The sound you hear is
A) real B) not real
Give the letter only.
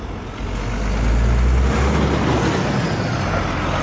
A